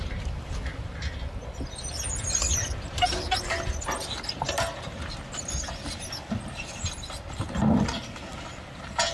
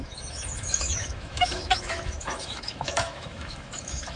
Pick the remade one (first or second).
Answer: second